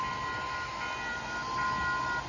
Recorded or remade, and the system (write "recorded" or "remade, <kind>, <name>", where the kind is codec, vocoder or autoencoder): recorded